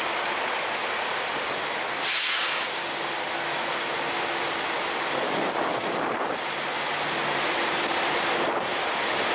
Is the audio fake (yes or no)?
no